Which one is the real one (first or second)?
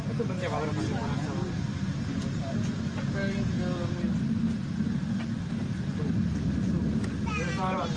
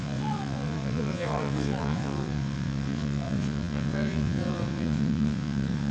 first